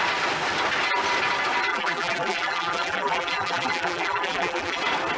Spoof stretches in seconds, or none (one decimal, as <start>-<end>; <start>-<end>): 1.7-4.8

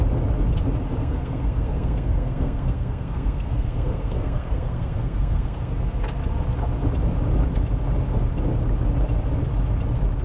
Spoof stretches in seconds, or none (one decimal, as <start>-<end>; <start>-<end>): 1.0-5.7

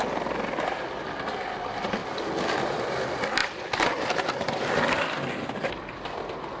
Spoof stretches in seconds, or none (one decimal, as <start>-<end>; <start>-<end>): none

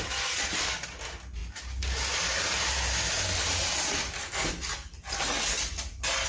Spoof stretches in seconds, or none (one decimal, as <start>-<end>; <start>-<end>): none